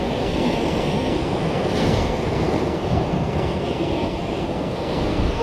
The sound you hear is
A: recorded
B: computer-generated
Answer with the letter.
B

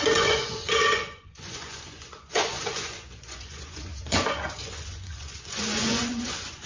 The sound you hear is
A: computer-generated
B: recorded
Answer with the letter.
A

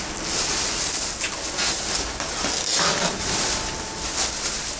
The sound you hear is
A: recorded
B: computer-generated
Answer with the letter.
A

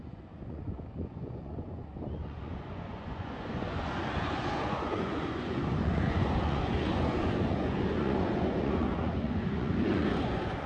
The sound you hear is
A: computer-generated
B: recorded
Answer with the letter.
A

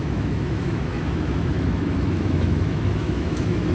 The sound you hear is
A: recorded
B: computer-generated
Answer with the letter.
B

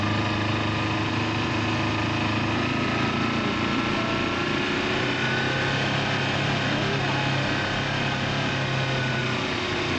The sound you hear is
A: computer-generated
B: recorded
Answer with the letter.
B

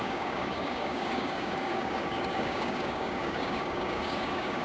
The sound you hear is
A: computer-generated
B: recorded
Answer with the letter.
A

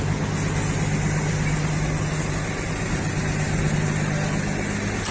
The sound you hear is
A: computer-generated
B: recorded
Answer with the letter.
B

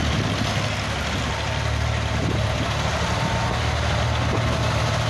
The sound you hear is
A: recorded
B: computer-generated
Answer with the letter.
A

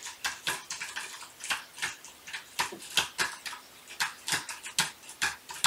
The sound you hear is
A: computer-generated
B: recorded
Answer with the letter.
B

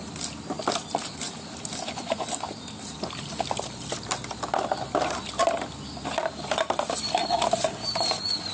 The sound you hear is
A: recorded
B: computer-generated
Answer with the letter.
A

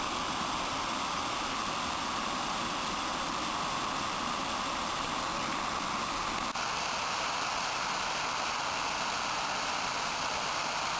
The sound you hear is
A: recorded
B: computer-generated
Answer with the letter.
A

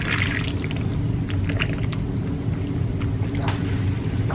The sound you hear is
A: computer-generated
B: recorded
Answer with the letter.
B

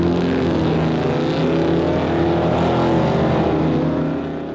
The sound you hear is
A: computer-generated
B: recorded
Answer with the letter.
B